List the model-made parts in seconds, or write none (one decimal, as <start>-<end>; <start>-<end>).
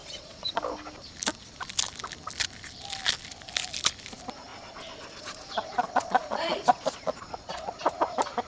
0.0-0.6; 4.5-7.9